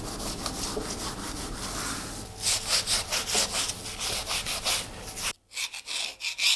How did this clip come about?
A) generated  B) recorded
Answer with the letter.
B